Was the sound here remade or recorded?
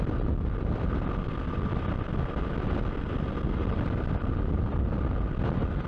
recorded